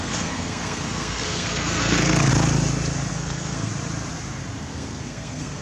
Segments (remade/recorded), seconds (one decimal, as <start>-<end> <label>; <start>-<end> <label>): 0.0-2.3 remade; 2.3-3.1 recorded; 3.1-3.7 remade; 3.7-4.6 recorded; 4.6-5.6 remade